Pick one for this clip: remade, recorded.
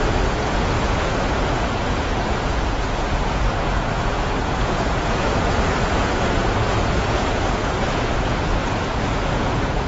remade